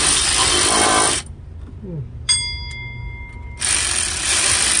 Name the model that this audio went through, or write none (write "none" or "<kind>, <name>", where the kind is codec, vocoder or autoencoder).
none